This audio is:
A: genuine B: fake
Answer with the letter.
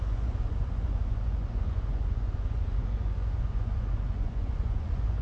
B